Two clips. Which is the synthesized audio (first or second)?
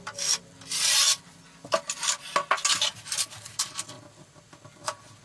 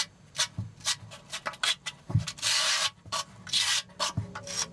second